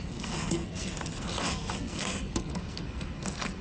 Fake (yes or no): yes